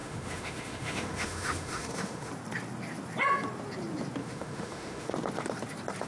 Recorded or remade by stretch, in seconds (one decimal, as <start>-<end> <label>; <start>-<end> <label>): 0.0-2.3 remade; 2.3-4.2 recorded; 4.2-5.1 remade; 5.1-6.1 recorded